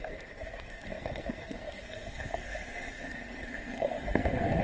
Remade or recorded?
remade